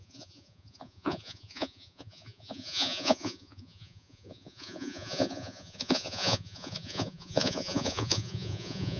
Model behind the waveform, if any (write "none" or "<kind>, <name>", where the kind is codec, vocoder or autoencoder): vocoder, Vocos